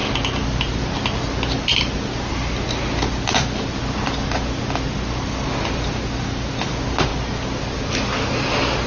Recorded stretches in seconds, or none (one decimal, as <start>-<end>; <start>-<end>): 0.0-8.9